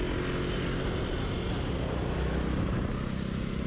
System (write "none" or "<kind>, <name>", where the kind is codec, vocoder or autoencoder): none